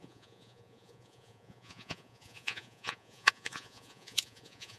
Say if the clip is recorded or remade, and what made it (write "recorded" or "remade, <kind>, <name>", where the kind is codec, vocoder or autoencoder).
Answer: remade, vocoder, Vocos